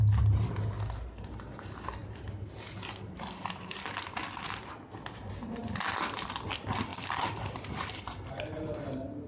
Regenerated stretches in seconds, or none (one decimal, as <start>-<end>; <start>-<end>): 5.6-6.4; 6.9-8.8